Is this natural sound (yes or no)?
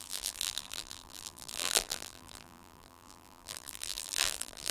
no